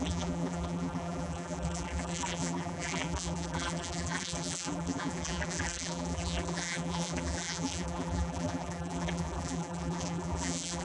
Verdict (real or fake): fake